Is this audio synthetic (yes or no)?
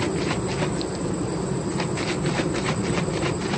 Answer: yes